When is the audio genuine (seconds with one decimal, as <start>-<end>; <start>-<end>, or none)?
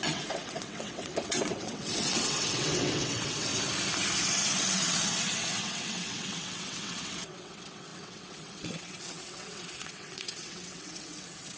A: 3.5-4.3